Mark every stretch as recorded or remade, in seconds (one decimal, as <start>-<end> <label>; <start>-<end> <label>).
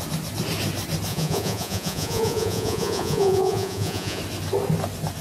0.0-1.1 recorded; 1.1-4.2 remade; 4.2-5.2 recorded